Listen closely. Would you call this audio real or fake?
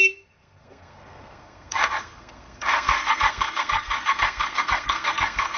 fake